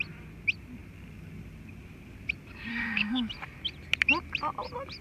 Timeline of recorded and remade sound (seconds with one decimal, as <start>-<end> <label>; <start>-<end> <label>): 0.0-2.7 recorded; 2.7-3.3 remade; 3.3-5.0 recorded